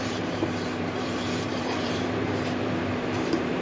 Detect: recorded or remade remade